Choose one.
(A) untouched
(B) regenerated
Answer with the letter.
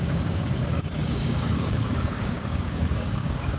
B